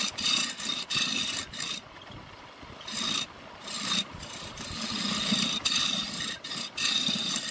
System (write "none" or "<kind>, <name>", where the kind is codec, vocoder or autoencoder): none